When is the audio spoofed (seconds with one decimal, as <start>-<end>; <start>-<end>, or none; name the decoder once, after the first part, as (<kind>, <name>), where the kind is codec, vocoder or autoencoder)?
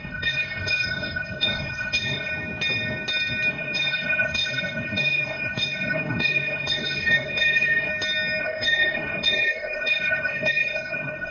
0.0-2.3 (codec, SNAC); 3.5-7.9; 8.4-11.3